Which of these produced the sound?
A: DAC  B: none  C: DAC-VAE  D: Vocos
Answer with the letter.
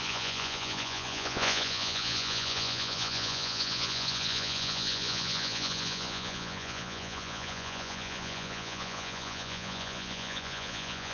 D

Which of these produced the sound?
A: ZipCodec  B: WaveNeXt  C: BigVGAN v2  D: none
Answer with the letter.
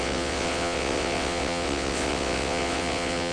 B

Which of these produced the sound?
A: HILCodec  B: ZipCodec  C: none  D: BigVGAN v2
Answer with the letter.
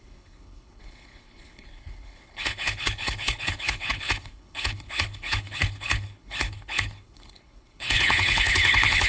A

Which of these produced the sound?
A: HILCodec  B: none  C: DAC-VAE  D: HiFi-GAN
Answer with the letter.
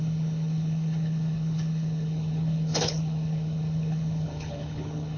A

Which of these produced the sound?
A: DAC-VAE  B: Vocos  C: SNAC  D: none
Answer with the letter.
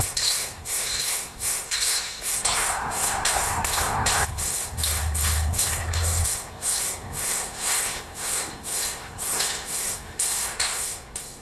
C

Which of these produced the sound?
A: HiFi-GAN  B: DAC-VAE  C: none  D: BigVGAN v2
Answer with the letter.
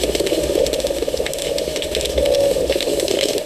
B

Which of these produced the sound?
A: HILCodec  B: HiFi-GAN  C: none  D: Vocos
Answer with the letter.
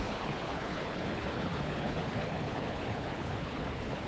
A